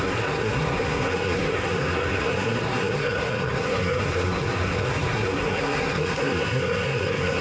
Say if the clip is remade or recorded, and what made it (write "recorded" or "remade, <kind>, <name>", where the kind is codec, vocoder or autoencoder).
remade, codec, SNAC